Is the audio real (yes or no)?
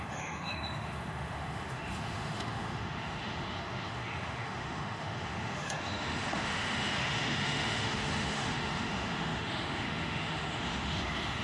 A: no